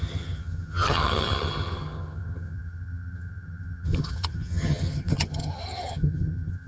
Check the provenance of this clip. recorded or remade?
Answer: remade